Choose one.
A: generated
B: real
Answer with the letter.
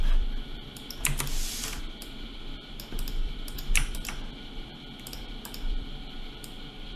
A